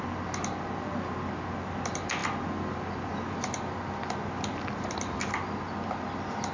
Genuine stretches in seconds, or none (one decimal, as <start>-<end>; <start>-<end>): 0.0-6.5